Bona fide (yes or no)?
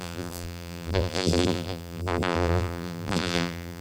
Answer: no